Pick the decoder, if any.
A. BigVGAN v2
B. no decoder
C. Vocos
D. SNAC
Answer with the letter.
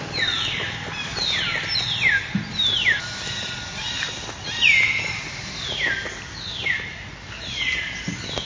B